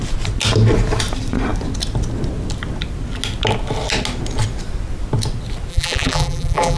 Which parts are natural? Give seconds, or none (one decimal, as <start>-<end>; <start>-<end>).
0.0-5.7